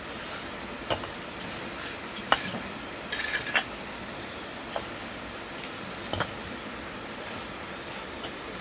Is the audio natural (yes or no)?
yes